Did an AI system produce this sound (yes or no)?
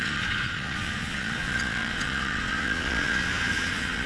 yes